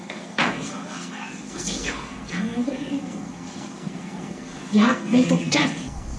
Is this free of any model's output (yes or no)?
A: no